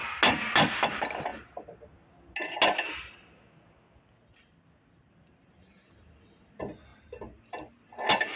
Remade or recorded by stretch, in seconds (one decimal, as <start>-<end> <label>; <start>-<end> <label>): 0.0-8.4 recorded